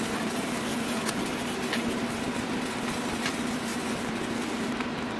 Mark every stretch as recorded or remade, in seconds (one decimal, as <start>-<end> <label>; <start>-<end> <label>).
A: 0.0-0.7 recorded; 0.7-1.2 remade; 1.2-5.2 recorded

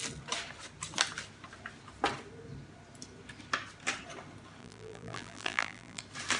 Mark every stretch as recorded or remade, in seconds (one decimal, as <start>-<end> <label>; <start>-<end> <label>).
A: 0.0-4.6 recorded; 4.6-6.0 remade; 6.0-6.4 recorded

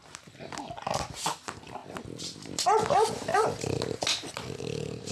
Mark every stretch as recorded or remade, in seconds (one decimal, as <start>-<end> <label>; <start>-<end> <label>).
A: 0.0-5.1 recorded

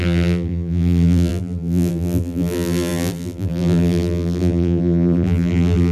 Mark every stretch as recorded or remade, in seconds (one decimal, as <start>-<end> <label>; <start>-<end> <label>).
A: 0.0-5.9 remade